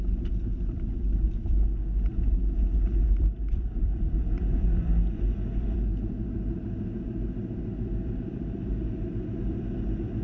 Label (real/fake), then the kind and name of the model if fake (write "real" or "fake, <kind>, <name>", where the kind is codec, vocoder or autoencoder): fake, vocoder, BigVGAN v2